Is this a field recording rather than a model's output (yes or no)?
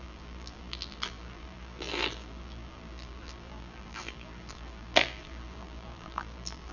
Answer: no